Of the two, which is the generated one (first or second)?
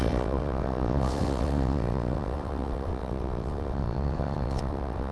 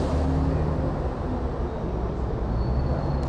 first